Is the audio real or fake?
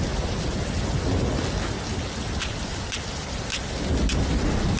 real